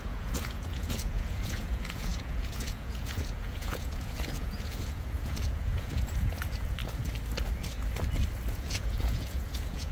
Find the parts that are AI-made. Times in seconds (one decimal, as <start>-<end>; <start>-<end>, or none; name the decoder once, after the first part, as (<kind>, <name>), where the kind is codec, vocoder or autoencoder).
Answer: 0.0-6.8 (vocoder, Vocos); 8.5-9.9